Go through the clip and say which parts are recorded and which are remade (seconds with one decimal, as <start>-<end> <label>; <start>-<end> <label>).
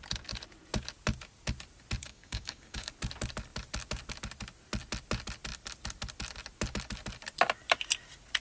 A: 0.0-2.0 recorded; 2.0-2.9 remade; 2.9-8.4 recorded